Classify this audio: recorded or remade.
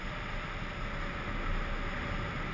recorded